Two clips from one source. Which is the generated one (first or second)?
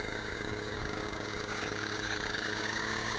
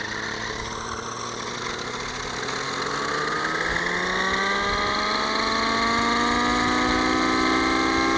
first